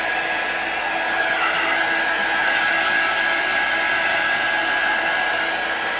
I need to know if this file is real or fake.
real